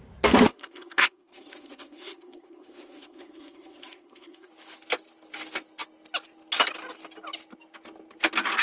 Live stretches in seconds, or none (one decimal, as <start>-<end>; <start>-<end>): 0.0-0.5; 4.5-8.6